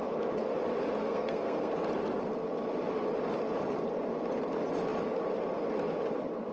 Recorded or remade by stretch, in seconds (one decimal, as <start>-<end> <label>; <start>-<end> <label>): 0.0-1.0 recorded; 1.0-1.7 remade; 1.7-6.5 recorded